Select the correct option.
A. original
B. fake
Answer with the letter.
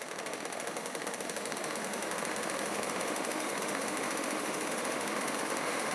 B